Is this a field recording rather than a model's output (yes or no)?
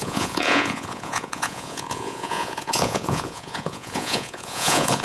no